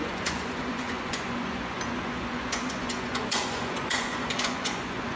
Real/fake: fake